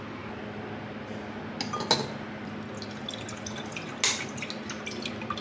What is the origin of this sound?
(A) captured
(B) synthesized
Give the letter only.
A